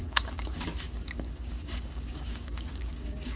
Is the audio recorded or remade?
remade